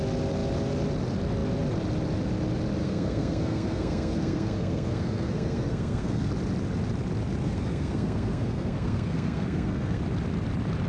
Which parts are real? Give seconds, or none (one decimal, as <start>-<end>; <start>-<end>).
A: 0.0-2.8; 6.3-7.4; 10.0-10.9